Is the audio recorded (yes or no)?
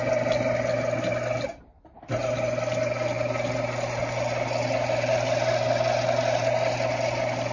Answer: yes